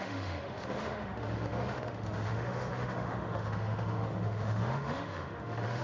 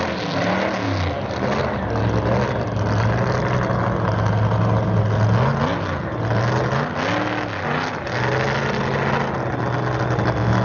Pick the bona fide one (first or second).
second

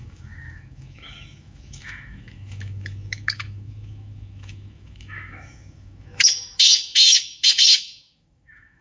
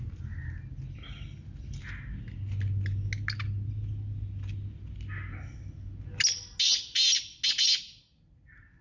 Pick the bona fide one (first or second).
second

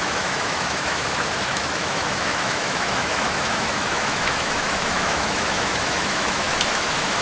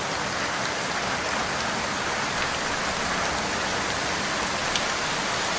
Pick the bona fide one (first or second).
second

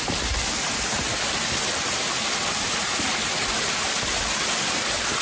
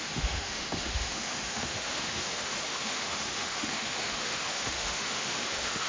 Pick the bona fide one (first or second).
first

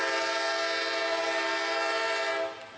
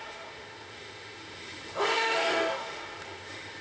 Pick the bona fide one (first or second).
first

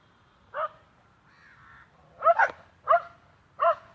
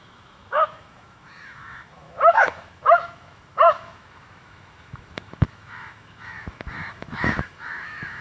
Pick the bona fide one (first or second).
first